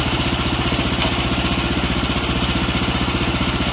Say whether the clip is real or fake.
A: real